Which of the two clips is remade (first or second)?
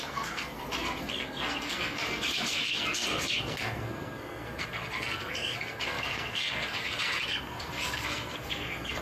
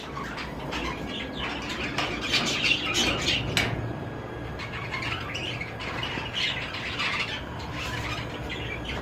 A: first